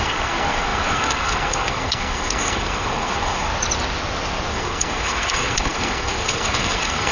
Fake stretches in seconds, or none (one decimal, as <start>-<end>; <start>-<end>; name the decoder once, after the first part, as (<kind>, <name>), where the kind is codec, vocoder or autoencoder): 0.0-3.5 (codec, SNAC); 4.5-7.1